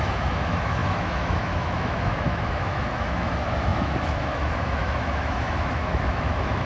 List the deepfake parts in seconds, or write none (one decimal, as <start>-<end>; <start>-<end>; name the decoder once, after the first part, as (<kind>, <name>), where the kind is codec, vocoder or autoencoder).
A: 0.0-6.7 (autoencoder, DAC-VAE)